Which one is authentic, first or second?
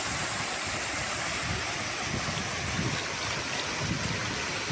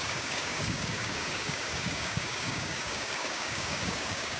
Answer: first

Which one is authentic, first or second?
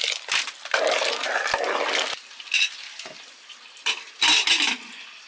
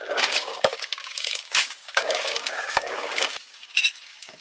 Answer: first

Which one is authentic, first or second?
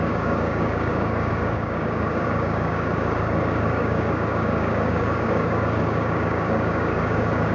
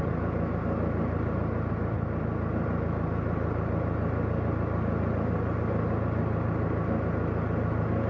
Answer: second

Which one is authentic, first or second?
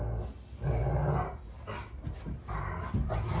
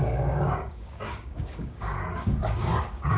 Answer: first